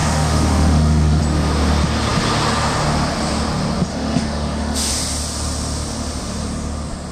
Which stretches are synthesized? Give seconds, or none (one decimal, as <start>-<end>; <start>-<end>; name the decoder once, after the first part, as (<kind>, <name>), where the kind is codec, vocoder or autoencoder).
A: 0.0-1.2 (autoencoder, DAC-VAE); 3.9-4.9